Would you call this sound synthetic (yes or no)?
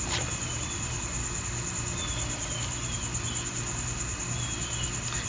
no